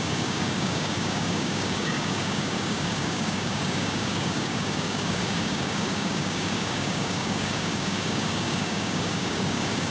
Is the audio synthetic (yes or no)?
yes